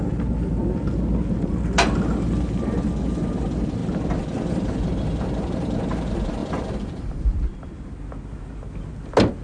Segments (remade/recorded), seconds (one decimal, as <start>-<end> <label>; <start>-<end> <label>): 0.0-3.8 recorded; 3.8-4.9 remade; 4.9-6.4 recorded; 6.4-7.8 remade; 7.8-9.4 recorded